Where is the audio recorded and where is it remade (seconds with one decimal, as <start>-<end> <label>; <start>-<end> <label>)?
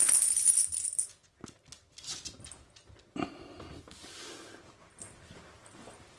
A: 0.0-6.2 recorded